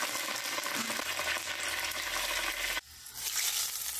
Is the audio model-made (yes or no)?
no